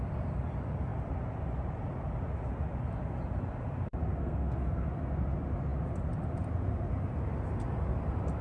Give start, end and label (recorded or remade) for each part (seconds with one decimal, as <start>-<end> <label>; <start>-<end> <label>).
0.0-4.2 recorded; 4.2-4.9 remade; 4.9-8.4 recorded